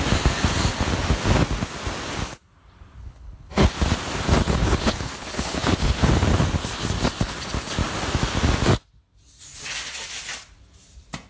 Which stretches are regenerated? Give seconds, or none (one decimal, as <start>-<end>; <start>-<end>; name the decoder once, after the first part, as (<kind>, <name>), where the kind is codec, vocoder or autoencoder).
3.0-3.7 (codec, HILCodec); 4.6-6.1